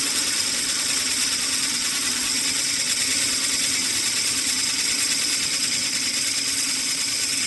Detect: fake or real fake